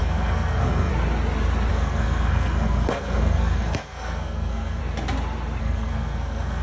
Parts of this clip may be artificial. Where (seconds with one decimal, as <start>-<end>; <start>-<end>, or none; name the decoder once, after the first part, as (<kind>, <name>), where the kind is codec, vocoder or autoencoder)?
0.0-0.9 (codec, SNAC); 1.7-4.8; 5.6-6.6